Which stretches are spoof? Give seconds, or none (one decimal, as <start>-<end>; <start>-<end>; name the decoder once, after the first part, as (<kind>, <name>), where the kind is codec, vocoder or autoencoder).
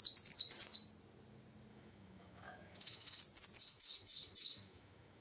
1.7-3.2 (autoencoder, DAC-VAE); 3.6-5.2